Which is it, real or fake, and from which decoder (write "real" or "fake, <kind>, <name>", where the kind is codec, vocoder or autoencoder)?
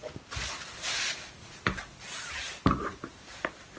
real